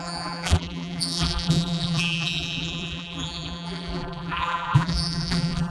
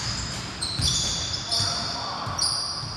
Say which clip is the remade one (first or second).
first